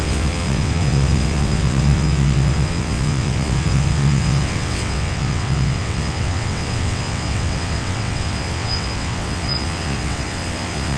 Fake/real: fake